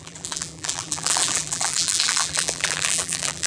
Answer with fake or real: fake